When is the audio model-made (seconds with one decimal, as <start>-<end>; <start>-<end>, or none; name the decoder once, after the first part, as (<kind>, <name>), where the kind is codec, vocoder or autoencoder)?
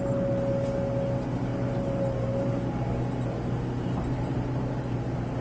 none